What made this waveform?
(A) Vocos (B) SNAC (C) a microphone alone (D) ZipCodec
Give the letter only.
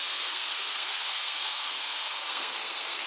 B